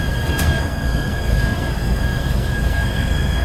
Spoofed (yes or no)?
yes